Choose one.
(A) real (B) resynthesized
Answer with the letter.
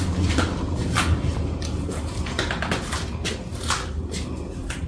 A